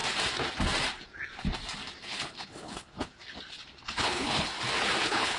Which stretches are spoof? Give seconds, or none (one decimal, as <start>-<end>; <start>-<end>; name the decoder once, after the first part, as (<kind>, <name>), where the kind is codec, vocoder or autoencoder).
2.0-3.1 (codec, HILCodec); 3.8-4.5; 5.0-5.4